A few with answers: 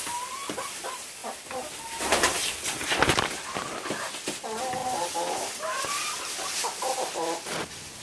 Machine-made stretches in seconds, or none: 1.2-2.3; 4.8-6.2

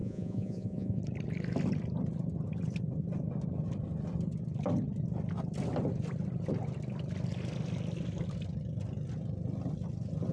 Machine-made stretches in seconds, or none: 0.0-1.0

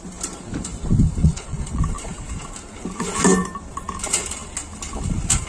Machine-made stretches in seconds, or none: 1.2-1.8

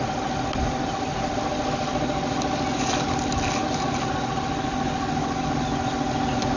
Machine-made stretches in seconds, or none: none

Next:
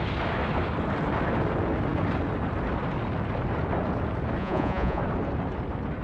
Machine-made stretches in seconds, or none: 4.4-5.0

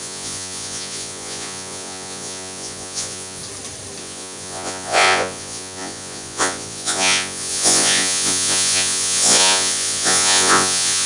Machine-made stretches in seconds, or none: 0.0-3.4; 4.0-11.1

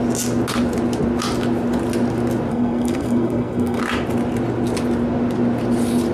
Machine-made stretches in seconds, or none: 2.5-3.8